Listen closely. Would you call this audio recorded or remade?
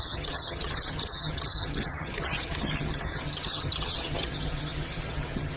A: remade